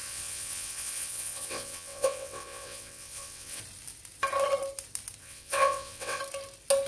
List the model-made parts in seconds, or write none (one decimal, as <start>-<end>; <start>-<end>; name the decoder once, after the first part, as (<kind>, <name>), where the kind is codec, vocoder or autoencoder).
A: 0.0-3.6 (vocoder, WaveNeXt); 5.2-6.2